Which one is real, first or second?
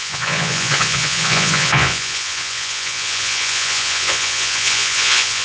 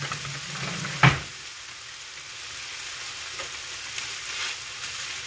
second